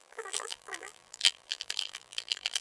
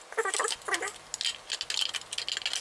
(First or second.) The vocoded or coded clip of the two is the first